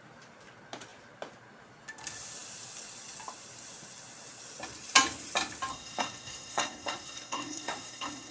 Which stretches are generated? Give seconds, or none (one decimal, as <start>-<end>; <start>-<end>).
5.7-8.3